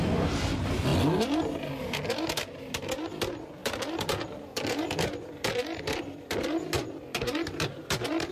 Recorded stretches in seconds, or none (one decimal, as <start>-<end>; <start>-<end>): 0.0-8.3